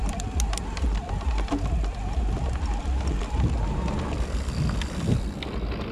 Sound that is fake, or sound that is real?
real